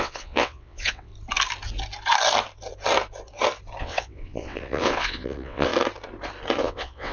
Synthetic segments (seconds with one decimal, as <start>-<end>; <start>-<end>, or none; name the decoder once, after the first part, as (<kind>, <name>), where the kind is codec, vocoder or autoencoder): 0.0-1.1 (vocoder, WaveNeXt); 3.8-5.7; 6.6-7.1